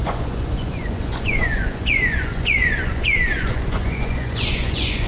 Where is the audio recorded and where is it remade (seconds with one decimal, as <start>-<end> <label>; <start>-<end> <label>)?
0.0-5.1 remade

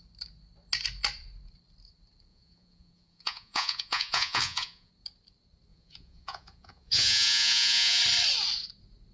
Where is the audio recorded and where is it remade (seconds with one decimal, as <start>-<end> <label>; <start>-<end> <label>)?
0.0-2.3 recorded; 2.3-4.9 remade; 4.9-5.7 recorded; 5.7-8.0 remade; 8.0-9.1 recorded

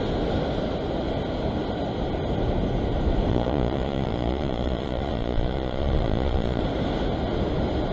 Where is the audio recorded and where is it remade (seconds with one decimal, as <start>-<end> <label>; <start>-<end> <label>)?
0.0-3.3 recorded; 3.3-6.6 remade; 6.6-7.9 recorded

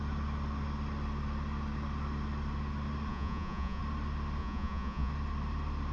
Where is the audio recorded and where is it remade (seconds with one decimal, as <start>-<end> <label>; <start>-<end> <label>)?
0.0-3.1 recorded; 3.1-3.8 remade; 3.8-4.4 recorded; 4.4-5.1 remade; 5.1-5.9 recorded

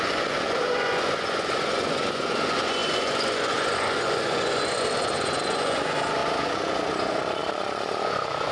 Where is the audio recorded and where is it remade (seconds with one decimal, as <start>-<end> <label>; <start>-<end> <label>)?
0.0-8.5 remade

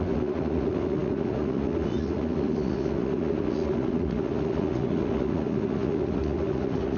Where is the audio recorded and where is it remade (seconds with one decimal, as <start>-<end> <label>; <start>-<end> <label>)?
0.0-7.0 remade